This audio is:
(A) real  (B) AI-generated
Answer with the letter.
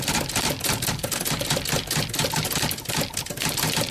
A